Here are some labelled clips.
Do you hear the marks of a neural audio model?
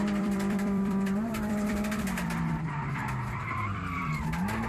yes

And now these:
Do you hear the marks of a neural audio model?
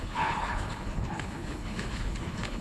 yes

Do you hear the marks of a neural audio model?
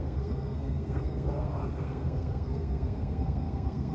yes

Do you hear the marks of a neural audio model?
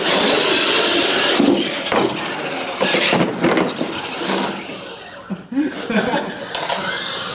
no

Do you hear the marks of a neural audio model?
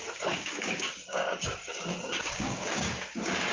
yes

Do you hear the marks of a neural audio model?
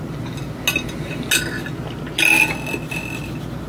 no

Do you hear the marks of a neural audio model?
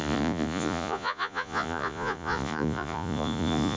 yes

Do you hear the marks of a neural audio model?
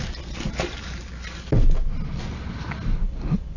no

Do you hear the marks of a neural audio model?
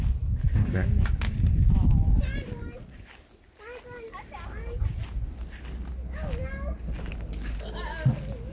no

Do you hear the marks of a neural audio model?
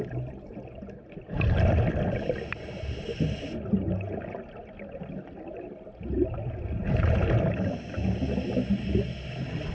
no